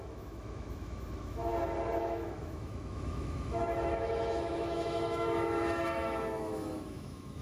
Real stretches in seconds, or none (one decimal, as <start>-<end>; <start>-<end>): 1.5-2.0